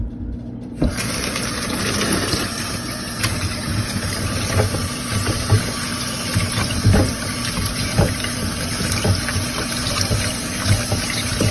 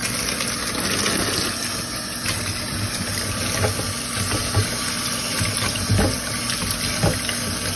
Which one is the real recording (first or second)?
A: second